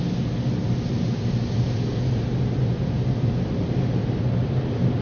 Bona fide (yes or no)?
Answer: yes